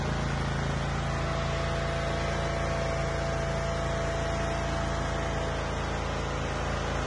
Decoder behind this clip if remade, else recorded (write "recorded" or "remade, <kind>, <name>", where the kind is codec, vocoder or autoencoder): recorded